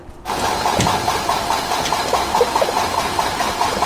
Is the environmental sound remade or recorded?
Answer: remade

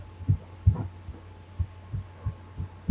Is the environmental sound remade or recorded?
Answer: remade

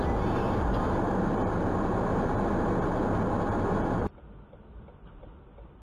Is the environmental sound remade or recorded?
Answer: recorded